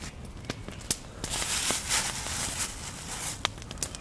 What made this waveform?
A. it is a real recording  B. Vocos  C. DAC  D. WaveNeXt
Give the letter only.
A